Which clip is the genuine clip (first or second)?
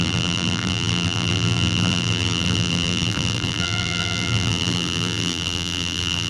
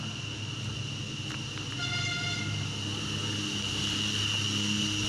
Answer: second